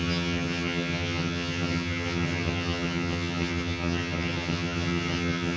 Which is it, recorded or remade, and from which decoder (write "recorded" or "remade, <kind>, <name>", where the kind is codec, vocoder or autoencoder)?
remade, vocoder, HiFi-GAN